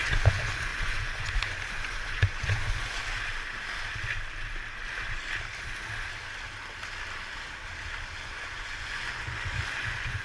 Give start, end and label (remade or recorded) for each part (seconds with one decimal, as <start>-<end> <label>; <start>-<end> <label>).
0.0-3.0 remade; 3.0-8.2 recorded; 8.2-10.2 remade